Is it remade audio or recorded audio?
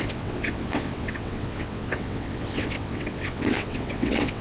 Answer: remade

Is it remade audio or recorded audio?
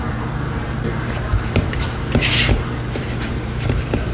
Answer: remade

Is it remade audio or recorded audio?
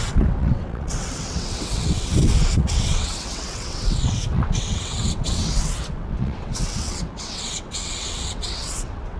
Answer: remade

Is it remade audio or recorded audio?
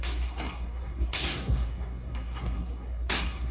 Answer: remade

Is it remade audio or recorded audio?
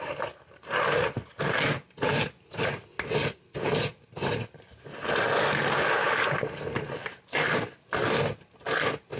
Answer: recorded